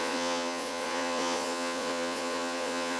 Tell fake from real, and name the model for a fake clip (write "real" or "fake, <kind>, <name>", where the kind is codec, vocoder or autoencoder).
fake, vocoder, Vocos